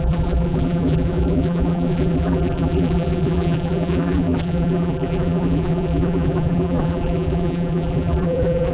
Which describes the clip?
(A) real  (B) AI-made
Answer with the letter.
B